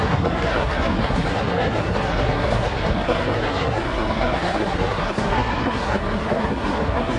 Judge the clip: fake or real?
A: fake